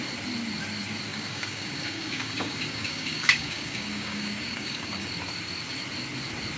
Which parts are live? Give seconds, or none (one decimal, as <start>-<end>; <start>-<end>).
0.0-1.1; 5.1-6.6